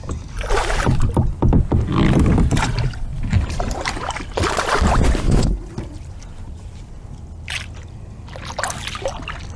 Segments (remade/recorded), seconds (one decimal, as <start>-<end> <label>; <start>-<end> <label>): 0.0-3.1 recorded; 3.1-4.9 remade; 4.9-9.6 recorded